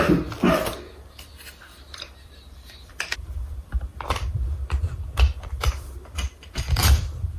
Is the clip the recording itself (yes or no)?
no